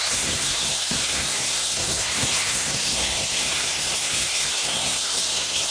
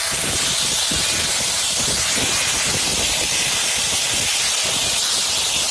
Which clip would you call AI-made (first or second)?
first